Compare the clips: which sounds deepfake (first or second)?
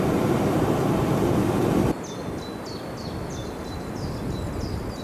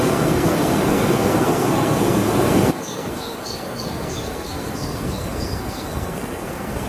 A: second